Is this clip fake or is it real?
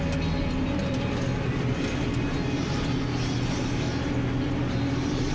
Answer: real